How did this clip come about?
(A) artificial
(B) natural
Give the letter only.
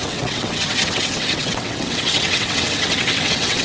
A